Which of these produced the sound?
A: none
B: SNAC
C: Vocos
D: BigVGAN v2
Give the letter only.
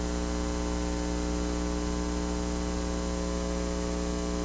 A